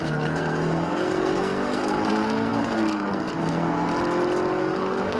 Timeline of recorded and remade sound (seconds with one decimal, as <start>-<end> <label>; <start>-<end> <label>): 0.0-3.9 remade; 3.9-4.6 recorded; 4.6-5.2 remade